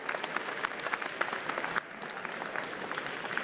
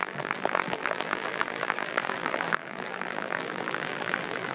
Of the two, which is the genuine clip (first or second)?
first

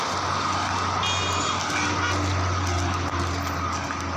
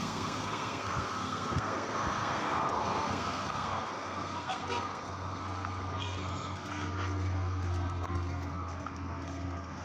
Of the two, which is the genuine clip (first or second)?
first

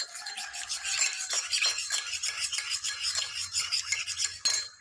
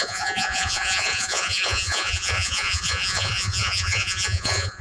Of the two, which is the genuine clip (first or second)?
first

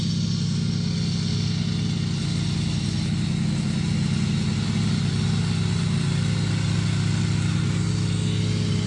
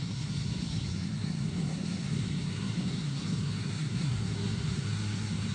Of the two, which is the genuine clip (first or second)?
first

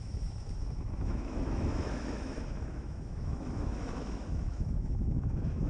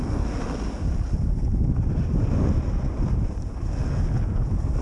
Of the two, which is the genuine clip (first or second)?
second